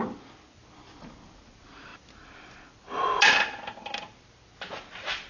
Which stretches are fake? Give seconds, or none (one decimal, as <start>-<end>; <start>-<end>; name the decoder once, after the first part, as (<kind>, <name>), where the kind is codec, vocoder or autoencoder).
none